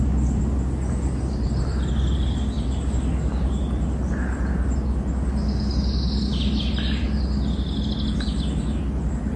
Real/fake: real